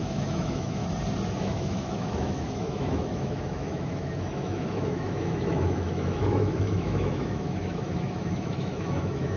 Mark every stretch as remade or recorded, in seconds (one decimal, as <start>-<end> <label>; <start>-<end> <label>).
0.0-0.8 remade; 0.8-1.4 recorded; 1.4-9.4 remade